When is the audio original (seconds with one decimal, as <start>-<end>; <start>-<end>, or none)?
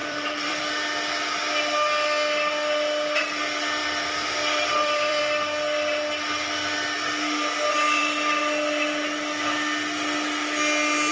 0.6-3.8; 5.2-11.1